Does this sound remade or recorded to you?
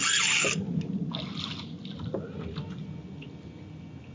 recorded